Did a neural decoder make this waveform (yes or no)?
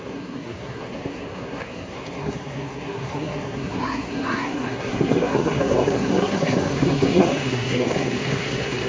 yes